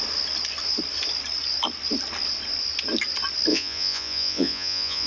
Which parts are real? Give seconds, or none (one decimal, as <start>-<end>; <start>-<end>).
0.0-3.5